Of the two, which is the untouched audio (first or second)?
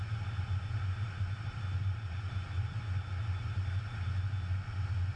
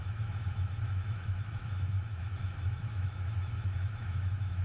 first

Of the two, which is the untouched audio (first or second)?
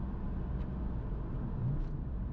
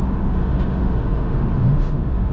first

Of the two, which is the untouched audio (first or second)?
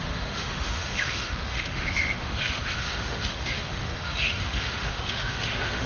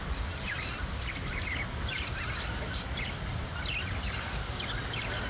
second